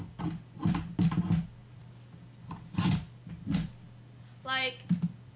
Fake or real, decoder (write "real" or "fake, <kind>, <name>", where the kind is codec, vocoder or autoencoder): real